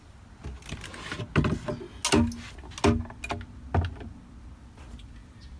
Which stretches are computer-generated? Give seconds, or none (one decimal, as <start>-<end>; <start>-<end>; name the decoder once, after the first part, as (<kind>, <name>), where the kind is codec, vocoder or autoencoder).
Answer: none

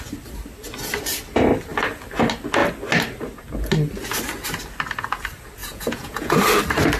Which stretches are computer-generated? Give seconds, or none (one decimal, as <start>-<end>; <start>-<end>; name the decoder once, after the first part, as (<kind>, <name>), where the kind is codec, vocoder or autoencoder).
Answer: 5.6-6.4 (vocoder, Vocos)

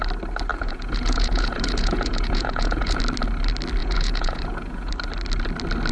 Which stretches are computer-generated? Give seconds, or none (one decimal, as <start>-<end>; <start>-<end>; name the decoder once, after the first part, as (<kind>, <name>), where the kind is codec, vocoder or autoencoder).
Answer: 0.5-3.0 (vocoder, Vocos); 3.8-4.9